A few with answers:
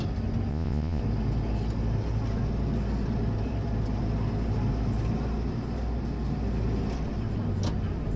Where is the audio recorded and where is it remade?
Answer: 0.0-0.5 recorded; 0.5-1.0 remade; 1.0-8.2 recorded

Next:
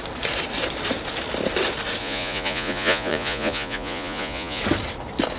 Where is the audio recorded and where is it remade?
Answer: 0.0-2.0 recorded; 2.0-4.6 remade; 4.6-5.4 recorded

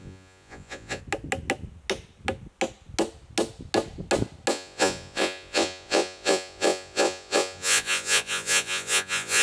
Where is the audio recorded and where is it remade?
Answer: 0.0-1.0 remade; 1.0-4.5 recorded; 4.5-9.4 remade

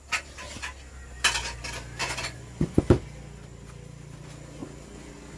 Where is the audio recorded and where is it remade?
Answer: 0.0-2.0 recorded; 2.0-2.8 remade; 2.8-5.4 recorded

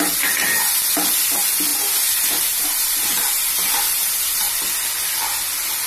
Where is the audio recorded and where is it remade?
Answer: 0.0-5.9 recorded

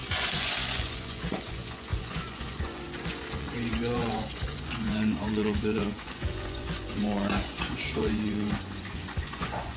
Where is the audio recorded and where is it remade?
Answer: 0.0-9.8 remade

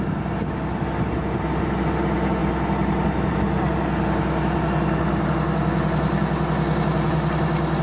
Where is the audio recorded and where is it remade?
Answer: 0.0-7.8 recorded